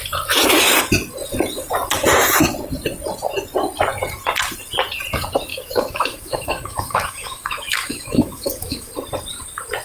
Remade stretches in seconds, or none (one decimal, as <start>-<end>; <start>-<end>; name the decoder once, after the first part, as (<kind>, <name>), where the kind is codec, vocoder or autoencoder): 5.5-8.9 (autoencoder, DAC-VAE)